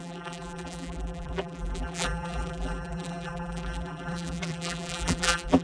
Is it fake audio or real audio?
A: fake